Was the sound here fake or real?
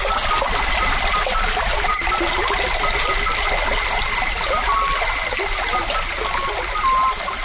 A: real